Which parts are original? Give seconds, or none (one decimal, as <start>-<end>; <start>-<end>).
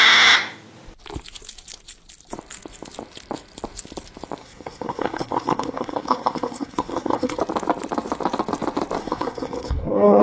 0.0-4.4; 7.4-9.0